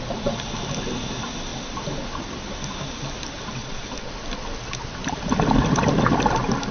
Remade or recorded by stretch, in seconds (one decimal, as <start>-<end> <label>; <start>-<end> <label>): 0.0-3.6 recorded; 3.6-4.1 remade; 4.1-6.7 recorded